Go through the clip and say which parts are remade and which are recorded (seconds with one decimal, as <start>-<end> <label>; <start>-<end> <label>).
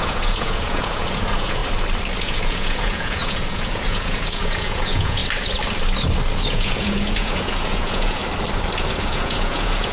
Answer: 0.0-1.6 remade; 1.6-2.2 recorded; 2.2-5.2 remade; 5.2-6.5 recorded; 6.5-8.2 remade; 8.2-9.0 recorded; 9.0-9.9 remade